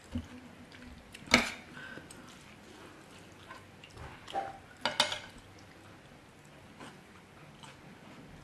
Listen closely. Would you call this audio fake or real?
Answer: real